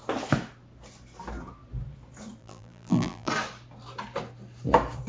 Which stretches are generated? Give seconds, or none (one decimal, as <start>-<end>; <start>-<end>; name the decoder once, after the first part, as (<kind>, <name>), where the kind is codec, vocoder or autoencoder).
2.4-3.3 (vocoder, BigVGAN v2)